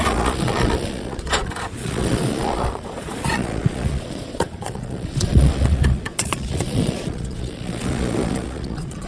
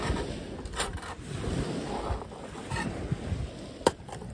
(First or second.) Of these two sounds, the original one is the second